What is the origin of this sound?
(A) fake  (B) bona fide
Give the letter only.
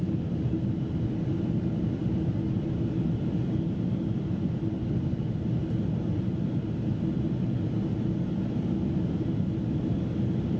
B